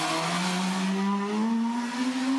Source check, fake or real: real